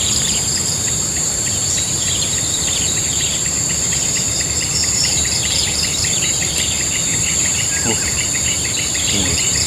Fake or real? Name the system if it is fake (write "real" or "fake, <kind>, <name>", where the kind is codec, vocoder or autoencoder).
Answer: fake, vocoder, BigVGAN v2